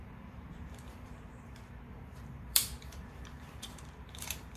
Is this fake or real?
fake